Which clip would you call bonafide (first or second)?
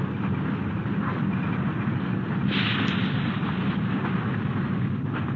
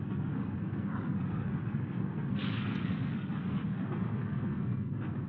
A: first